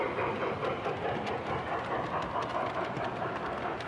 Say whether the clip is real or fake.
real